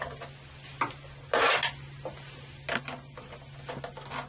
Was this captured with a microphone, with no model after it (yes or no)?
yes